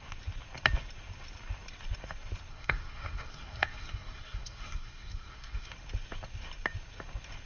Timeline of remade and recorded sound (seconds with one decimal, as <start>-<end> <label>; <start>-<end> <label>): 0.0-2.5 recorded; 2.5-5.7 remade; 5.7-7.5 recorded